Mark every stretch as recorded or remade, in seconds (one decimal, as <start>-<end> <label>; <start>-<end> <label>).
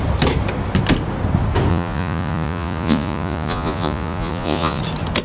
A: 0.0-1.7 recorded; 1.7-4.8 remade; 4.8-5.2 recorded